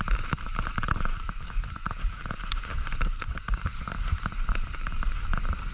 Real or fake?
fake